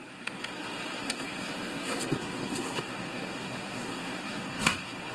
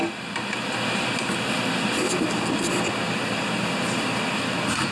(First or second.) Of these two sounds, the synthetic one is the first